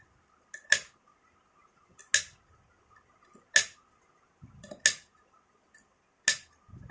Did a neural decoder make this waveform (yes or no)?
no